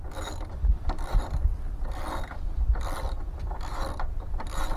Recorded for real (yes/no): yes